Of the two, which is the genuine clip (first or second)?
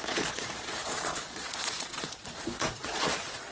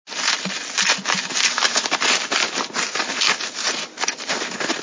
second